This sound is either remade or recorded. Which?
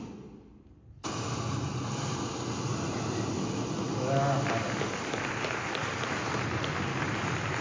recorded